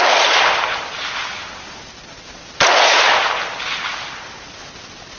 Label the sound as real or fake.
real